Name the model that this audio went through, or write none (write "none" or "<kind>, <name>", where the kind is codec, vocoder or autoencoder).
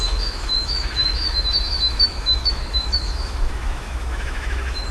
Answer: autoencoder, DAC-VAE